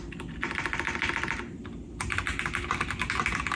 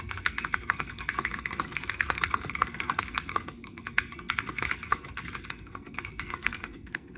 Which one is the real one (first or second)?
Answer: first